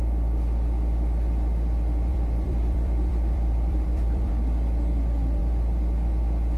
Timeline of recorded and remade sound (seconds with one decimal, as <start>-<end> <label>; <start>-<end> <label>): 0.0-2.1 recorded; 2.1-4.3 remade; 4.3-6.6 recorded